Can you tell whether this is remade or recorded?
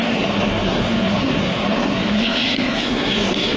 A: remade